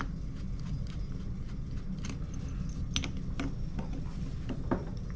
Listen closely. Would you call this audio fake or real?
real